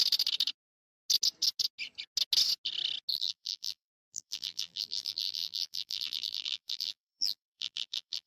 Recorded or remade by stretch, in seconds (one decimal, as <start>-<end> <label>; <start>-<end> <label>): 0.0-3.1 recorded; 3.1-8.3 remade

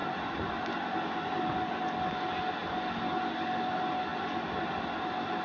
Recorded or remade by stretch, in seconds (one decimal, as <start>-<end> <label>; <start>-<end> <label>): 0.0-1.8 remade; 1.8-5.4 recorded

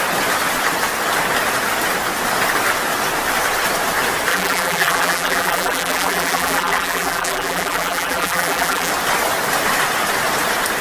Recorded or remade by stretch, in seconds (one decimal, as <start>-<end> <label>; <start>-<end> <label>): 0.0-4.3 recorded; 4.3-8.9 remade; 8.9-10.8 recorded

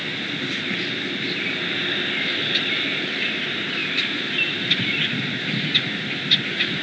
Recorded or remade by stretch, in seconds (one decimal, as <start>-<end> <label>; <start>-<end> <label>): 0.0-3.8 recorded; 3.8-6.8 remade

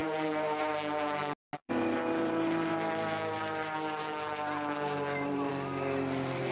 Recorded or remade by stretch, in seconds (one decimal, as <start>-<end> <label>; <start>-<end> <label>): 0.0-0.7 remade; 0.7-1.6 recorded; 1.6-5.5 remade; 5.5-6.5 recorded

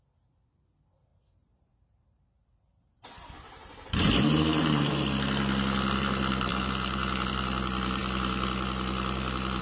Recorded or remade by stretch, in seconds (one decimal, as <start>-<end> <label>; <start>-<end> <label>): 0.0-1.1 recorded; 1.1-4.9 remade; 4.9-6.5 recorded; 6.5-7.3 remade; 7.3-9.6 recorded